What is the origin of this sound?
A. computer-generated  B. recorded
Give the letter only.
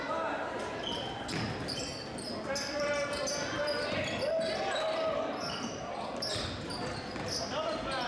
B